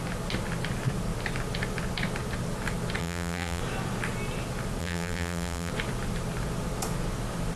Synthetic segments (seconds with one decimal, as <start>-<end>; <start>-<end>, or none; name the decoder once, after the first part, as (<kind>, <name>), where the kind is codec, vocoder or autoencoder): 3.0-3.6 (vocoder, BigVGAN v2); 4.8-5.7